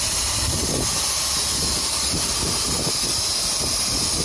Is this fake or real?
real